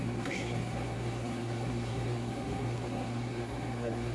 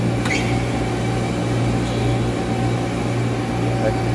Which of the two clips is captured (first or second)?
second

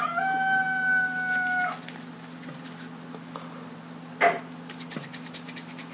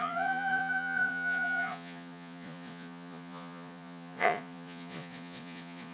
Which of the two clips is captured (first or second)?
first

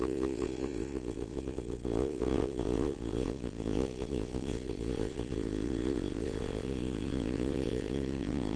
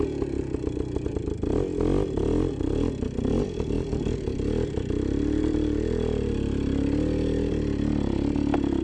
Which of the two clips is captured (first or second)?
second